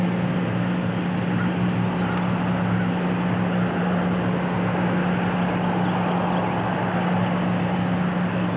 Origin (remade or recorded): recorded